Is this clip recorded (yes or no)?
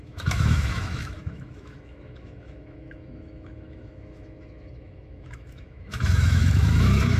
no